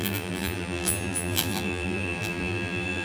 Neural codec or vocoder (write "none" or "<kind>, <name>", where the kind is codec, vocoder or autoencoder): vocoder, BigVGAN v2